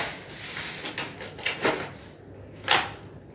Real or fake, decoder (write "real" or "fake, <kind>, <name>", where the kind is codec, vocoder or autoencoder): real